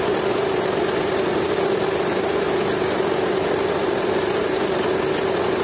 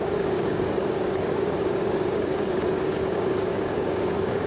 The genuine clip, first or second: first